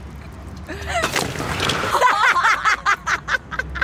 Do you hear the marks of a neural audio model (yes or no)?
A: no